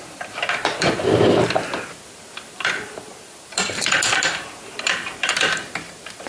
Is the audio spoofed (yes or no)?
yes